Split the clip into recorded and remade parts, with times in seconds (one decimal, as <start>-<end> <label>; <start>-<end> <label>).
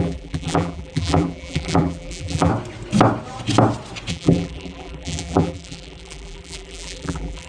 0.0-2.5 remade; 2.5-4.1 recorded; 4.1-7.5 remade